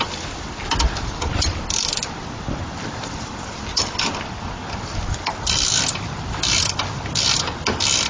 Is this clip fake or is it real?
real